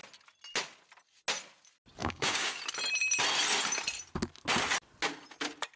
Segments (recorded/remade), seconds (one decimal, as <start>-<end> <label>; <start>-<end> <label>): 0.0-2.0 recorded; 2.0-2.6 remade; 2.6-5.8 recorded